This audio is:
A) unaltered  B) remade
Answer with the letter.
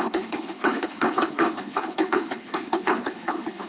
B